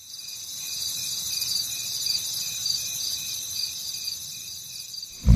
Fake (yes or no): yes